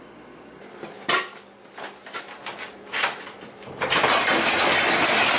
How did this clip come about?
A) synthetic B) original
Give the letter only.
B